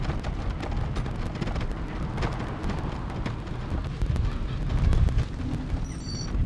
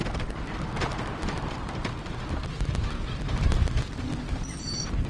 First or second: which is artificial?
second